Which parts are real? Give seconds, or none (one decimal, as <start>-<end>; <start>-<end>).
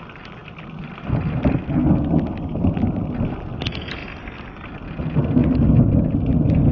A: 0.0-6.7